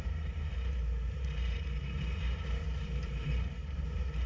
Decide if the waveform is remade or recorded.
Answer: remade